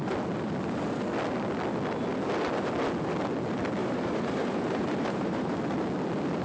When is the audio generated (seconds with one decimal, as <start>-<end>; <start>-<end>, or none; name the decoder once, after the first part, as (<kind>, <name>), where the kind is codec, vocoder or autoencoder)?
3.8-5.6 (vocoder, BigVGAN v2)